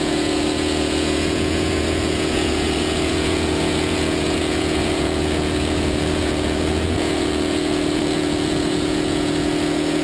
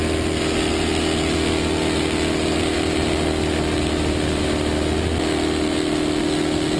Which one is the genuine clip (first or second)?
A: second